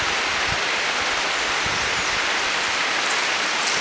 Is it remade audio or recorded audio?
recorded